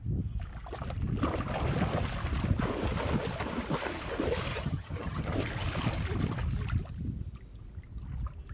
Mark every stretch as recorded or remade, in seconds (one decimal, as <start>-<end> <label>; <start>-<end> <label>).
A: 0.0-4.5 recorded; 4.5-5.2 remade; 5.2-8.5 recorded